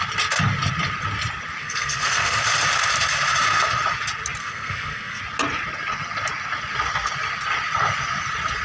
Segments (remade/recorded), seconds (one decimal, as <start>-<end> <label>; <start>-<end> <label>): 0.0-1.6 recorded; 1.6-2.4 remade; 2.4-4.4 recorded; 4.4-5.2 remade; 5.2-8.6 recorded